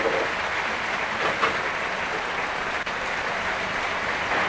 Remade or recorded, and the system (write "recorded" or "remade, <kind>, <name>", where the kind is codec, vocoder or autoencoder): recorded